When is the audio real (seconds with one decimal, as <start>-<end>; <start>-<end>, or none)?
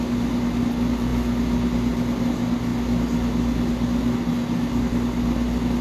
0.0-5.8